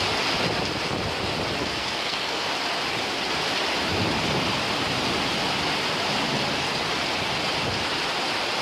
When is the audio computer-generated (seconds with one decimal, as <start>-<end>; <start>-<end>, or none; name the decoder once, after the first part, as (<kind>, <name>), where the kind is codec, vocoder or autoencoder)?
1.6-2.5 (codec, SNAC)